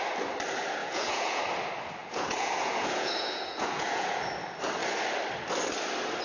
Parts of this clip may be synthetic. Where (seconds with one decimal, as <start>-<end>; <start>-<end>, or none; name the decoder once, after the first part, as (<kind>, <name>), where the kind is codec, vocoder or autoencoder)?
0.8-1.4 (vocoder, Vocos); 2.0-4.2